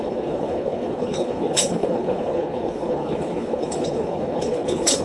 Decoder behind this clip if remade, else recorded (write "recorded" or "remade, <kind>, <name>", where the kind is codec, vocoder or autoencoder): remade, codec, HILCodec